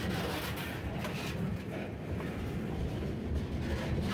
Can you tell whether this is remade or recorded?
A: recorded